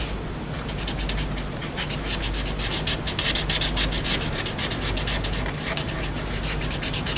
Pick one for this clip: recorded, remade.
recorded